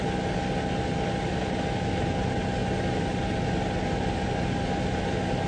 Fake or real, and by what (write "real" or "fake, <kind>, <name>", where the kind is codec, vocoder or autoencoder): real